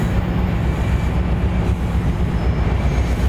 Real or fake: real